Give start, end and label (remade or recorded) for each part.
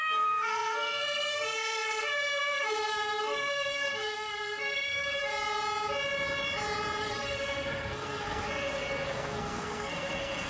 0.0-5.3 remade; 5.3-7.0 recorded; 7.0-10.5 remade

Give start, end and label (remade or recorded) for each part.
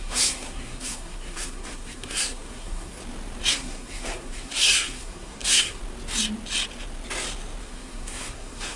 0.0-3.0 remade; 3.0-3.5 recorded; 3.5-5.8 remade; 5.8-7.6 recorded; 7.6-8.8 remade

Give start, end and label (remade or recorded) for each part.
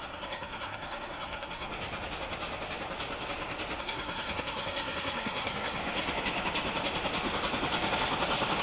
0.0-1.7 remade; 1.7-3.8 recorded; 3.8-5.8 remade; 5.8-8.6 recorded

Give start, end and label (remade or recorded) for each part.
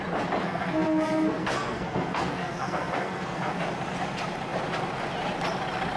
0.0-0.4 recorded; 0.4-3.6 remade; 3.6-6.0 recorded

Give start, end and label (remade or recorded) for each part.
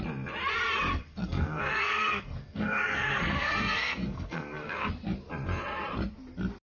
0.0-0.9 recorded; 0.9-4.9 remade; 4.9-6.7 recorded